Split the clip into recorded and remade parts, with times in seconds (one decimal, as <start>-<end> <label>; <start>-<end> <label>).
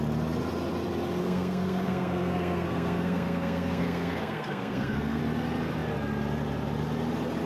0.0-1.2 recorded; 1.2-5.2 remade; 5.2-7.5 recorded